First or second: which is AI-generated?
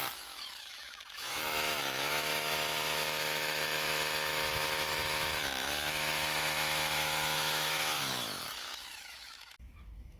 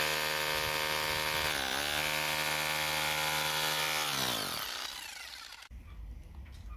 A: first